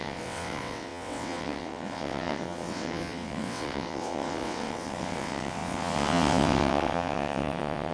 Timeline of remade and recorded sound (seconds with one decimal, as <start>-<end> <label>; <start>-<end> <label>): 0.0-7.9 remade